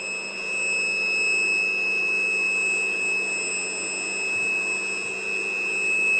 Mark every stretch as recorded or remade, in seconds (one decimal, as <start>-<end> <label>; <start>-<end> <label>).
0.0-6.2 recorded